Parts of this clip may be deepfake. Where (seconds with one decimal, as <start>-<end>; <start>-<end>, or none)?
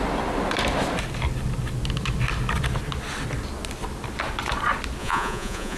5.0-5.8